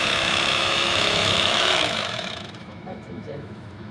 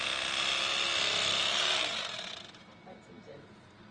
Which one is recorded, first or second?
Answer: second